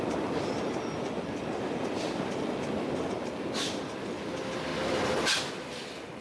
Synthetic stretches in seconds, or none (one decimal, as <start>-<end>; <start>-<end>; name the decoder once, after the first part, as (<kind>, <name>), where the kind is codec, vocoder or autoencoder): none